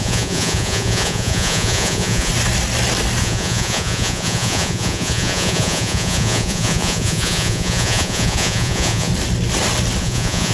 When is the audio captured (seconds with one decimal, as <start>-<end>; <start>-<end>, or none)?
2.3-3.2; 9.1-10.0